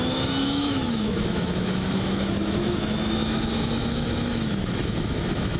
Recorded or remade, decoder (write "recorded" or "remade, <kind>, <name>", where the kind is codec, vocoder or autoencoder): remade, autoencoder, DAC-VAE